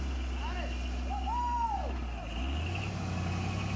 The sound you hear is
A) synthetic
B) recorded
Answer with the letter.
B